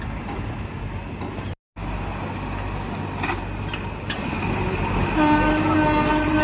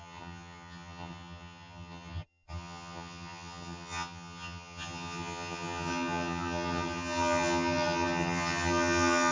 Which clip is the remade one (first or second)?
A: second